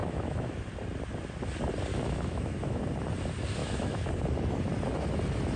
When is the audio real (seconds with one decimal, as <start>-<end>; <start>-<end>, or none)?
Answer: 0.6-1.9; 2.8-3.6; 4.1-5.6